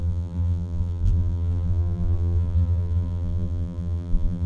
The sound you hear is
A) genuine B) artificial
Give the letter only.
B